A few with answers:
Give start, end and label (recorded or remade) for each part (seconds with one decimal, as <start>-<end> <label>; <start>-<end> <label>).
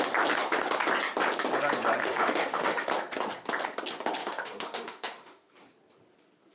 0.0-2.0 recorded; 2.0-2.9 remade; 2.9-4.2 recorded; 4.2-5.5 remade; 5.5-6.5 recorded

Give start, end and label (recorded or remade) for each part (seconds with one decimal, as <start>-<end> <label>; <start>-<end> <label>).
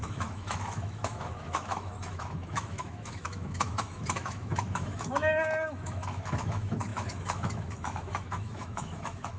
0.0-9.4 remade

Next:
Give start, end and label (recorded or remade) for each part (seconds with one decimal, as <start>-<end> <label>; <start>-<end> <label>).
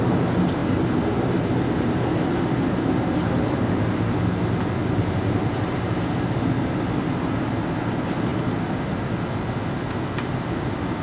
0.0-11.0 recorded